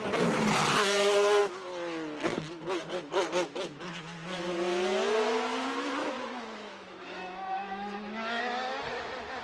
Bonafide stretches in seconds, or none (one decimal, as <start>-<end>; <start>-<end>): 0.0-6.0; 8.4-9.4